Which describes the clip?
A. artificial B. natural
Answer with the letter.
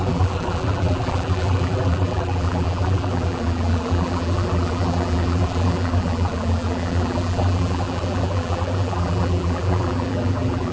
A